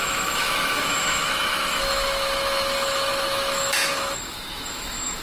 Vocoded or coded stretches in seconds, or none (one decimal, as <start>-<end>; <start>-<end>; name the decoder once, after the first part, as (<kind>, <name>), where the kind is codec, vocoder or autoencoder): 0.0-5.2 (autoencoder, DAC-VAE)